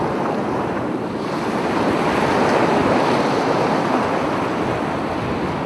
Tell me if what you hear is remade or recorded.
recorded